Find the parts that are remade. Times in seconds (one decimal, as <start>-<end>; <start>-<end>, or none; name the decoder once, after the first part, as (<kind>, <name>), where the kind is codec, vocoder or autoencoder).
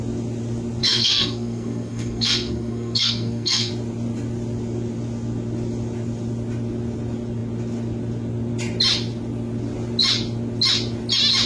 0.8-3.7 (codec, SNAC)